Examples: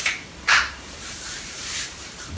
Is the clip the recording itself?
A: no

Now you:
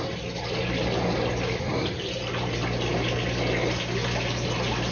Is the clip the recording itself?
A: yes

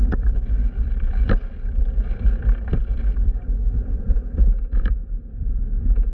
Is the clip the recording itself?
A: no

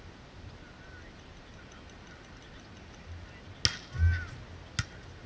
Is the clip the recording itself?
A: yes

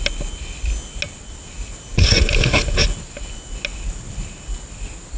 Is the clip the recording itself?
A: yes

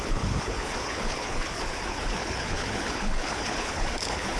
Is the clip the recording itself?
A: no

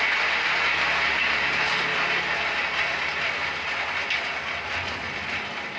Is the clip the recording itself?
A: yes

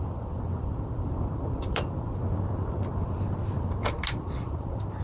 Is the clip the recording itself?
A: no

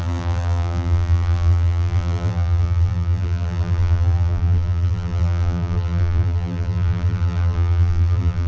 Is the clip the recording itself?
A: no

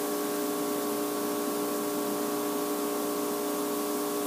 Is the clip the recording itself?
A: yes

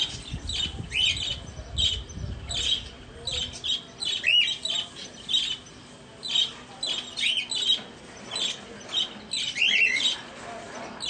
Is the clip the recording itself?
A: yes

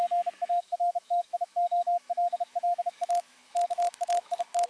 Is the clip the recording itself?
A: no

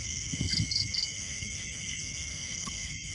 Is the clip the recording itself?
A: no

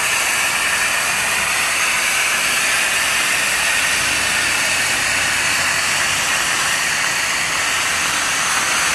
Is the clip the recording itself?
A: yes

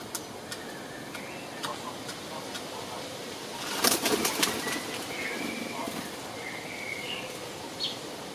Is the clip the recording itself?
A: yes